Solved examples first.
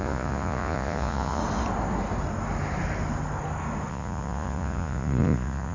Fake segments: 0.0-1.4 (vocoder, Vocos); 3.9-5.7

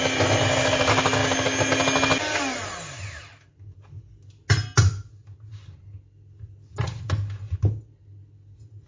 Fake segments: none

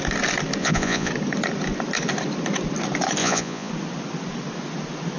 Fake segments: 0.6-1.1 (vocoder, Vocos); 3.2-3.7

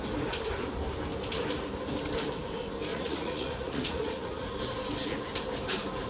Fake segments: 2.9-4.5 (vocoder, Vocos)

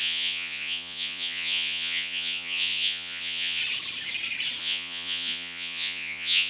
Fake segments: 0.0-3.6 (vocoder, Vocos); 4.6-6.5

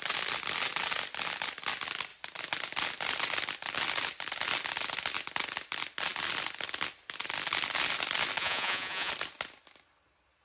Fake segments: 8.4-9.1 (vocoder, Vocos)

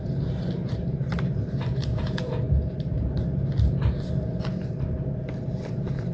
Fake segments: 1.8-2.4 (vocoder, Vocos)